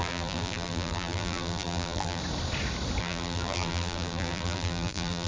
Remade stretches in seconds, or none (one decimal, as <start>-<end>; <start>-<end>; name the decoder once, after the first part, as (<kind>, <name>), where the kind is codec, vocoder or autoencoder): 0.0-2.2 (vocoder, BigVGAN v2); 3.0-5.3